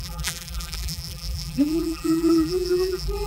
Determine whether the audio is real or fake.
fake